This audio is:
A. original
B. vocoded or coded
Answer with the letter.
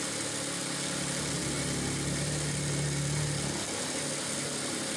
A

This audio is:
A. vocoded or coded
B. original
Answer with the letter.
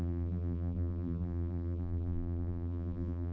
A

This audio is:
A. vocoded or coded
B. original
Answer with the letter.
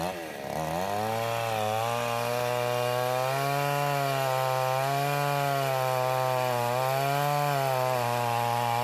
B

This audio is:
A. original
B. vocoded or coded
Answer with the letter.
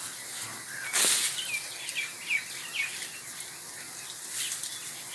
A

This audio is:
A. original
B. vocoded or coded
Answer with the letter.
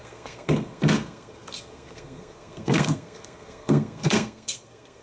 B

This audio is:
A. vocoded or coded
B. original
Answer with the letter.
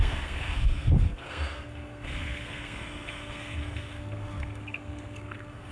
A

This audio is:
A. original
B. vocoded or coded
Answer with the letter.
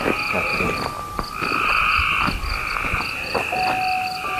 A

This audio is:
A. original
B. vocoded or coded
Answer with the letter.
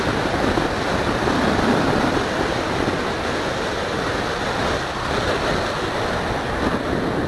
A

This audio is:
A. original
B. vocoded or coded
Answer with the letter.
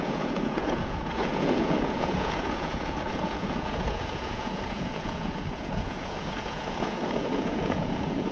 B